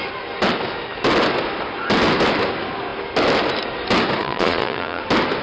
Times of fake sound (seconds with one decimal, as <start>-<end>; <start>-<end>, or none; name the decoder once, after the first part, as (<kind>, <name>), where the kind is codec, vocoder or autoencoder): 4.2-5.0 (vocoder, Vocos)